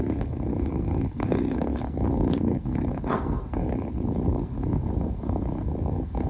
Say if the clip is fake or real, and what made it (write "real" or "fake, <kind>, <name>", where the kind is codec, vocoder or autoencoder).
fake, codec, SNAC